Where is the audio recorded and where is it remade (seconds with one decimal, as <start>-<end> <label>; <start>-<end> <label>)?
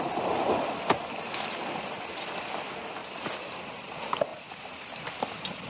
0.0-5.7 recorded